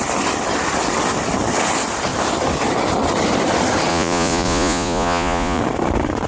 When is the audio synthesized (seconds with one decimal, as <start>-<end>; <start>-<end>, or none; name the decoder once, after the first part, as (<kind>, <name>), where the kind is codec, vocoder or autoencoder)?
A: 3.9-5.6 (vocoder, Vocos)